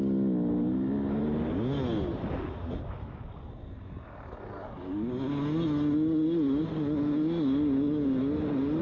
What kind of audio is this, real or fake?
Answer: real